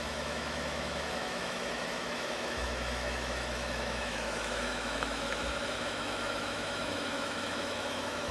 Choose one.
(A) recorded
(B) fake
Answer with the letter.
B